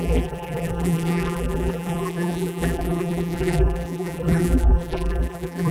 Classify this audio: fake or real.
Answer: fake